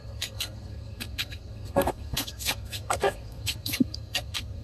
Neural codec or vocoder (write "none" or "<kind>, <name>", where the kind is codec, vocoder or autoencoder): codec, SNAC